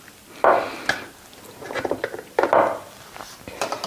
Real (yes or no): yes